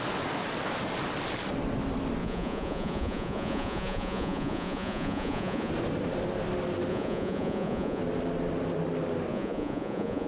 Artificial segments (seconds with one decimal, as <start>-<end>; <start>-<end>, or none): 2.2-5.7; 6.9-8.0; 9.3-10.3